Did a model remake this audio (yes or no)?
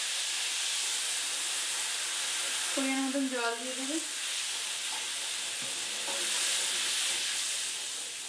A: no